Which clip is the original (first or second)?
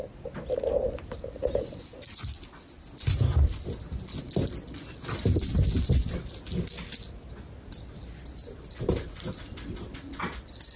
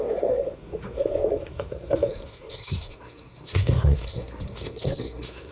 first